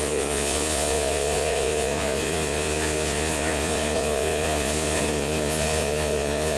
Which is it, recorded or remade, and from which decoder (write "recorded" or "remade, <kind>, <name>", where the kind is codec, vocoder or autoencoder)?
remade, vocoder, Vocos